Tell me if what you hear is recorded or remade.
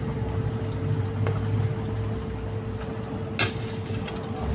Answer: recorded